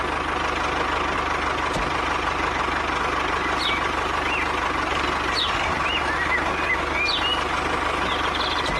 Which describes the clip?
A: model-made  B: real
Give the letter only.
B